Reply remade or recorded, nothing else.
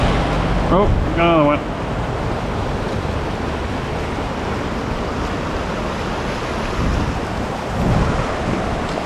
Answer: recorded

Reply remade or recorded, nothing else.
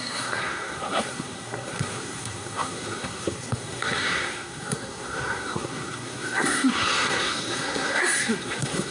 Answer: remade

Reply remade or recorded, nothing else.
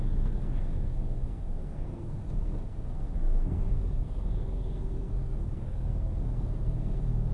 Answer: remade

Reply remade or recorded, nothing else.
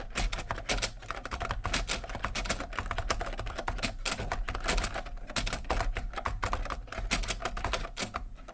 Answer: recorded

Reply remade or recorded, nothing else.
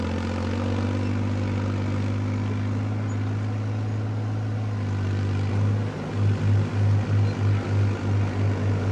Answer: recorded